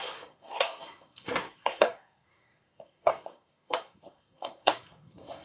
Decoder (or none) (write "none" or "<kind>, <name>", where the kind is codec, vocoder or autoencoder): codec, SNAC